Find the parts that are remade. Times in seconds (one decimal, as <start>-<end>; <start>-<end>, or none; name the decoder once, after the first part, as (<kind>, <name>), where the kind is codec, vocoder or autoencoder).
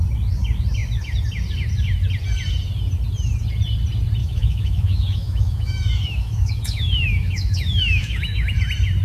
4.2-8.6 (autoencoder, DAC-VAE)